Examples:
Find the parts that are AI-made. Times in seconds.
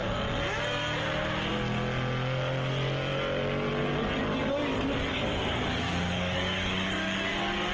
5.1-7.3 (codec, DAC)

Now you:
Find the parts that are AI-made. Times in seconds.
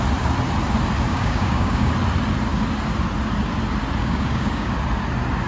1.1-1.9 (codec, DAC); 4.0-4.7